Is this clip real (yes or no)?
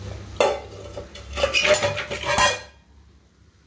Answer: yes